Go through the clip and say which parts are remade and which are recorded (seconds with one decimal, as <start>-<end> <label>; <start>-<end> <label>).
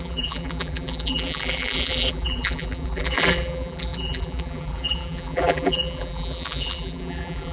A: 0.0-7.5 remade